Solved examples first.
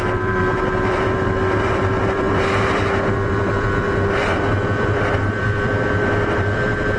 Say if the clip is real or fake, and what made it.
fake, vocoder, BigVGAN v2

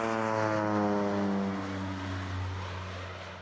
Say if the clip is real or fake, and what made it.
real